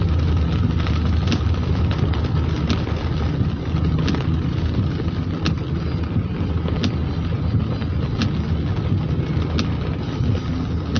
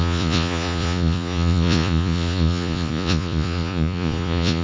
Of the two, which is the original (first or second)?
first